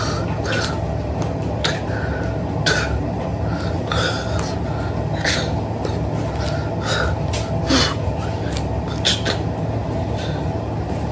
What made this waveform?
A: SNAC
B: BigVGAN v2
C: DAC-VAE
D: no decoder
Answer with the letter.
D